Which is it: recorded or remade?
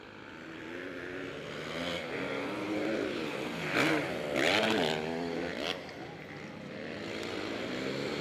recorded